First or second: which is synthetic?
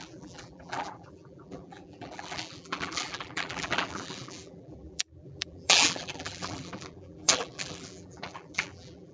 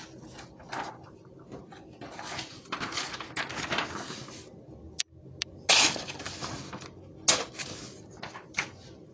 first